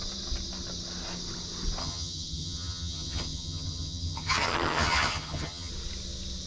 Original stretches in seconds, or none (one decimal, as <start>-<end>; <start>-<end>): 0.0-1.8; 5.7-6.5